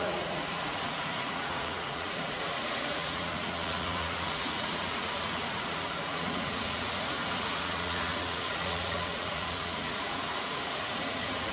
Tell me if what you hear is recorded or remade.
remade